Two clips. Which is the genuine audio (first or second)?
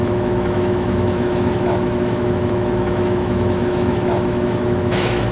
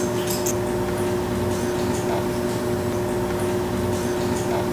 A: second